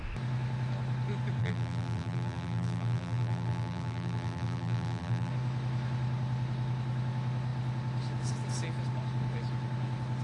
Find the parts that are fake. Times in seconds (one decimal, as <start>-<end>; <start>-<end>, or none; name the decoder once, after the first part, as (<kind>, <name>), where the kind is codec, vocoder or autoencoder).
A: 1.4-5.3 (vocoder, BigVGAN v2)